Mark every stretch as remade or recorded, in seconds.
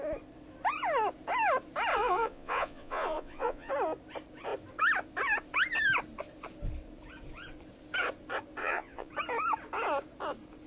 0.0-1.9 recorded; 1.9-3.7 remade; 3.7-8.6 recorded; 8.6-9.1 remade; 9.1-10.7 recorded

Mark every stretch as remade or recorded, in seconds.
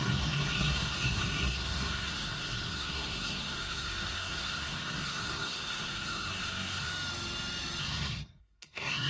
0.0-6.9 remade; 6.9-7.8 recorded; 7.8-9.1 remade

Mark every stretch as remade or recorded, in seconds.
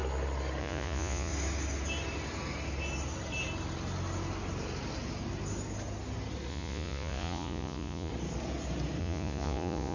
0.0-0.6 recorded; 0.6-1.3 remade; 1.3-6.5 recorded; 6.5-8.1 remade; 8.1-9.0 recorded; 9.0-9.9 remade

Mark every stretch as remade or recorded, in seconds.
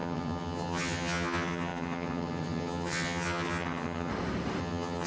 0.0-4.1 remade; 4.1-4.6 recorded; 4.6-5.1 remade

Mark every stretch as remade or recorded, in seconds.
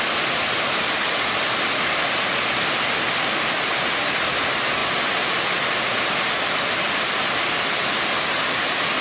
0.0-9.0 recorded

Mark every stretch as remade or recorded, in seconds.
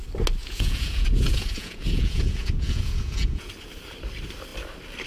0.0-0.4 recorded; 0.4-3.5 remade; 3.5-5.1 recorded